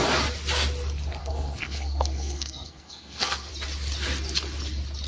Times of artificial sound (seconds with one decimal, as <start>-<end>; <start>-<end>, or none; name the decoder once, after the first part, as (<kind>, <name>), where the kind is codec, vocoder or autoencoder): 1.2-3.5 (codec, SNAC)